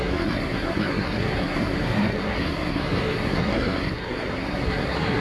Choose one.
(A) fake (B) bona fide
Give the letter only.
A